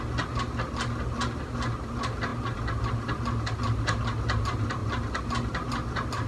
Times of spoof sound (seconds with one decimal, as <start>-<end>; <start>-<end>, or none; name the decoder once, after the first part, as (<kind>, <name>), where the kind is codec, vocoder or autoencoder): none